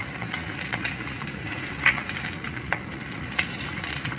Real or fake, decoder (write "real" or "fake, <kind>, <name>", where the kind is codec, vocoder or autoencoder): fake, vocoder, Vocos